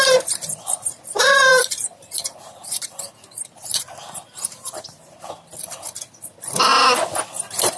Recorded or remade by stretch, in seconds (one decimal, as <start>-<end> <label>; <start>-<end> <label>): 0.0-1.5 recorded; 1.5-5.3 remade; 5.3-7.8 recorded